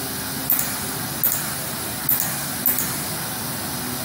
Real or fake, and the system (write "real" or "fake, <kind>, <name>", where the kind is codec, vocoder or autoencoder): real